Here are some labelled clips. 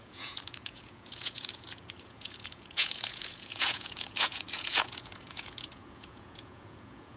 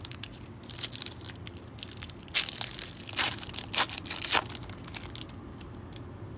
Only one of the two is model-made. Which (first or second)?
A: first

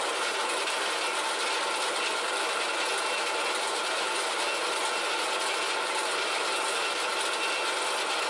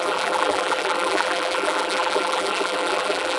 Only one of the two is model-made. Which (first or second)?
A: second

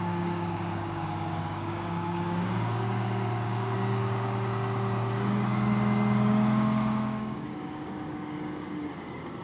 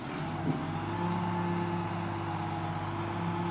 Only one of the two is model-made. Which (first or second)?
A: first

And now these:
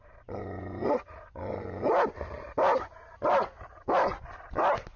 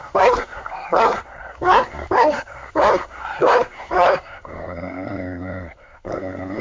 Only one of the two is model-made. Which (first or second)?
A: second